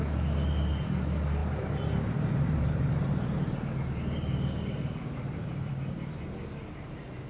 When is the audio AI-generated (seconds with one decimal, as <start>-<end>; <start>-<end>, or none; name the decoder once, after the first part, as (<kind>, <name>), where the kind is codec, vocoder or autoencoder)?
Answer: 1.4-5.7 (vocoder, BigVGAN v2)